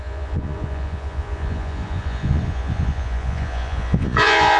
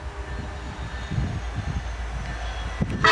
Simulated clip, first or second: first